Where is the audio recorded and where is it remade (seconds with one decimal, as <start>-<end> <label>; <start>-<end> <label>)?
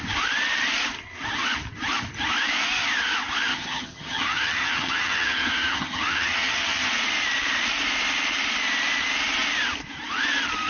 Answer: 0.0-3.5 recorded; 3.5-6.9 remade; 6.9-10.7 recorded